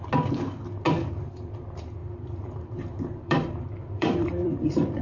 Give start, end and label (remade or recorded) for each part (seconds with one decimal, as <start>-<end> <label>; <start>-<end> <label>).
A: 0.0-2.0 recorded; 2.0-5.0 remade